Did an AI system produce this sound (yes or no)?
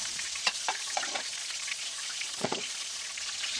yes